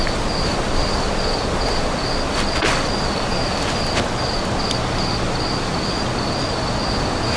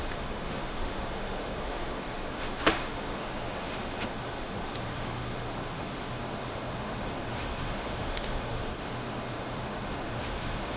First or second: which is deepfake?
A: second